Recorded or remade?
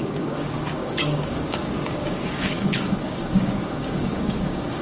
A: remade